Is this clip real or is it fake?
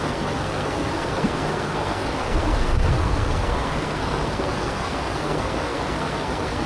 fake